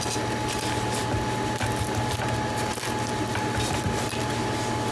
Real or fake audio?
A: real